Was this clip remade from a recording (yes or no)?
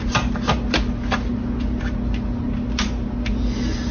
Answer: no